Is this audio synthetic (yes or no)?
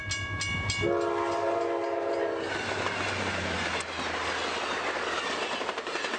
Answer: no